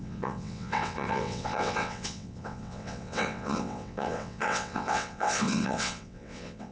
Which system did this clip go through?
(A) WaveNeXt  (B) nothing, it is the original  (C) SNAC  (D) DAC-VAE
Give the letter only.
A